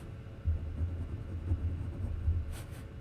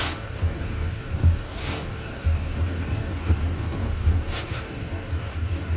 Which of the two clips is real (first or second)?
first